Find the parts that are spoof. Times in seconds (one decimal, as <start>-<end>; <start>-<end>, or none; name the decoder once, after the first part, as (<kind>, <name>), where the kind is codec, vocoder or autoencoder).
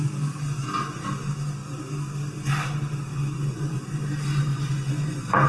3.1-3.8 (vocoder, Vocos); 4.5-5.5